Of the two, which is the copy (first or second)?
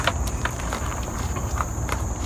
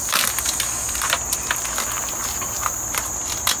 first